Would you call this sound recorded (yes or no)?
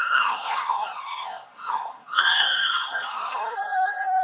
no